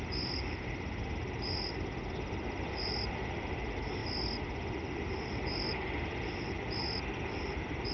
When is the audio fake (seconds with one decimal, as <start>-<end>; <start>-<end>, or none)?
none